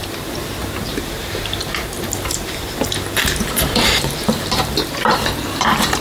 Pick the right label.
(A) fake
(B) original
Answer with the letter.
A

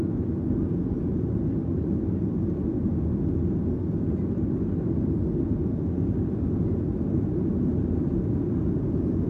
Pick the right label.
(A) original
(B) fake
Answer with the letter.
A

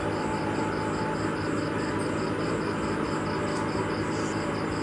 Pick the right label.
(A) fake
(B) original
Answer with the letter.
B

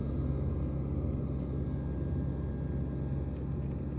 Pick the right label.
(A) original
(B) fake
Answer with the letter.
A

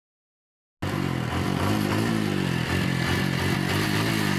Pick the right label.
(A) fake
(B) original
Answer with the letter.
B